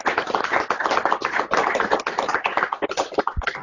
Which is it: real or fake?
real